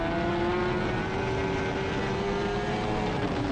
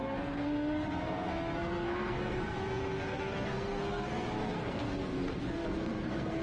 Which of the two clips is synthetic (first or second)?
second